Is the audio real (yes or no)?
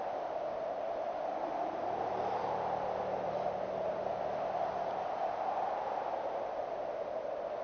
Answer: yes